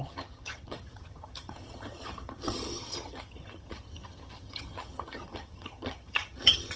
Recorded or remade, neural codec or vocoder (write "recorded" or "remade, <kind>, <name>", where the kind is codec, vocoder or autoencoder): remade, vocoder, HiFi-GAN